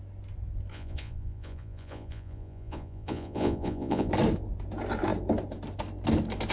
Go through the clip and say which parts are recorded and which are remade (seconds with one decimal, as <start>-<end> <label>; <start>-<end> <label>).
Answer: 0.0-0.7 recorded; 0.7-4.1 remade; 4.1-6.5 recorded